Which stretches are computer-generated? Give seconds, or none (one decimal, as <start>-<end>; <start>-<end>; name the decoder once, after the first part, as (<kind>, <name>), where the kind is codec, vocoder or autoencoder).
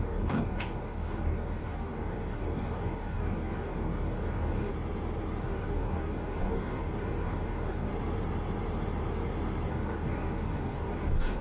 0.0-4.7 (codec, DAC); 5.4-7.9; 9.7-11.4